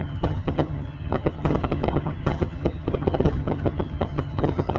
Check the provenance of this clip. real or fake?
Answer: fake